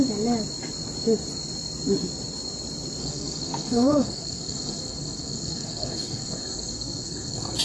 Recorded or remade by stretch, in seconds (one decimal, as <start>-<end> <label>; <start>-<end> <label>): 0.0-3.0 recorded; 3.0-7.6 remade